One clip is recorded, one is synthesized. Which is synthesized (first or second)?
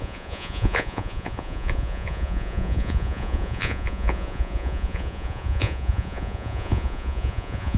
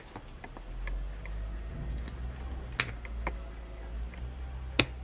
first